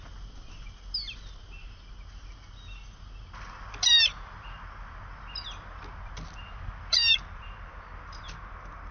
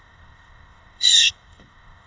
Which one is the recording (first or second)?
first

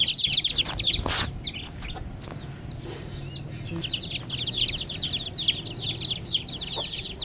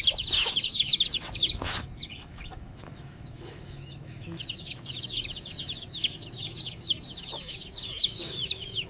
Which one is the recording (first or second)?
first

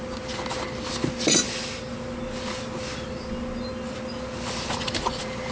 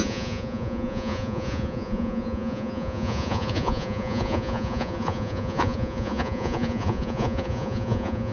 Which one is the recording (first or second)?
first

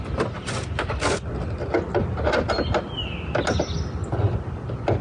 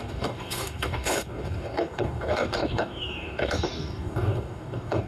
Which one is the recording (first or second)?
first